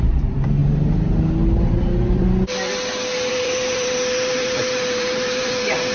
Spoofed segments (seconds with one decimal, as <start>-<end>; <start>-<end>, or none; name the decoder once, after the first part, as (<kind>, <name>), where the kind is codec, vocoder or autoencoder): 0.0-0.6 (vocoder, BigVGAN v2); 3.3-5.9